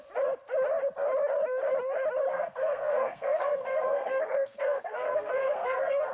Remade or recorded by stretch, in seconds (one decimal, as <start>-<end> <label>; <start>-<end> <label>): 0.0-2.3 recorded; 2.3-6.1 remade